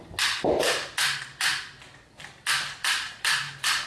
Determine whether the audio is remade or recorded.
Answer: recorded